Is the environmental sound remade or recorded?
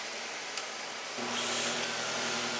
recorded